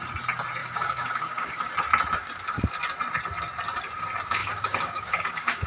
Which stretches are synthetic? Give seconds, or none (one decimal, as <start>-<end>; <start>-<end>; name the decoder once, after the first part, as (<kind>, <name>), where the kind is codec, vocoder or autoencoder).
0.6-1.6 (codec, DAC); 4.4-5.7